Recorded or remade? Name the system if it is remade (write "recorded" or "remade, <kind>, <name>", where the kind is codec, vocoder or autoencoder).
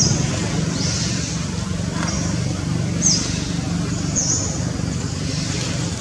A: recorded